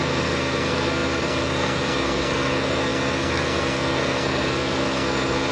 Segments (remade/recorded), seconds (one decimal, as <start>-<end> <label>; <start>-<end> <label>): 0.0-5.5 remade